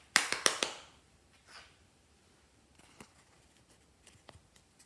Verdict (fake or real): fake